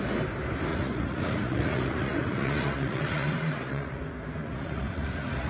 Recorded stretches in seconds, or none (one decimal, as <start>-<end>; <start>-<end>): 0.0-0.7; 4.0-4.4